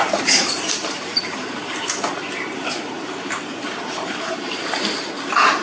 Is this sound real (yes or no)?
no